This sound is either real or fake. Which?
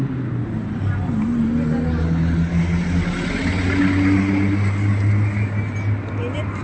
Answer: real